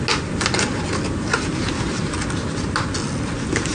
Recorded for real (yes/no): yes